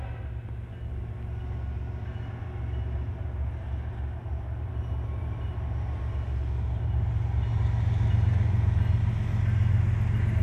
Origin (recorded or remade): recorded